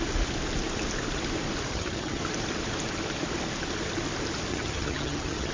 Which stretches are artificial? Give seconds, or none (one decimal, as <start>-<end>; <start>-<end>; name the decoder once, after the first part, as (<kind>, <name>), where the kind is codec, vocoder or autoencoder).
1.7-2.2 (vocoder, HiFi-GAN); 4.5-5.5